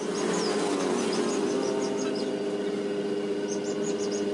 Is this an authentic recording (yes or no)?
yes